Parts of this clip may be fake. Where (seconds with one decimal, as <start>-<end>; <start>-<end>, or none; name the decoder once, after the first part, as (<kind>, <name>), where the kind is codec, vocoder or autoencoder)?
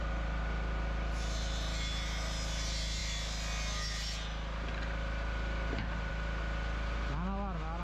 none